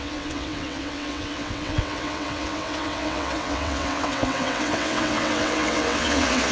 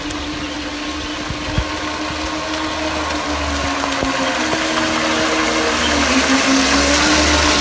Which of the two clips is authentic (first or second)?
second